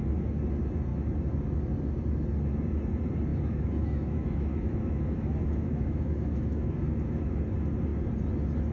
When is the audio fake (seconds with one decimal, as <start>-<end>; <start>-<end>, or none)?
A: 3.3-7.4